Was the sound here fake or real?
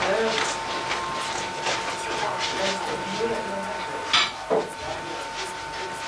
real